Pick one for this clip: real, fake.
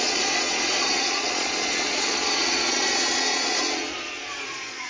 fake